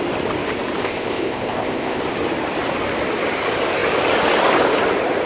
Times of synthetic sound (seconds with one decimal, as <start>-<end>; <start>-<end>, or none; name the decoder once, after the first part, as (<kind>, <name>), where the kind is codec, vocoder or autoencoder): 0.8-2.0 (codec, ZipCodec)